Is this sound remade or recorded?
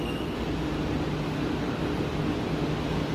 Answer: recorded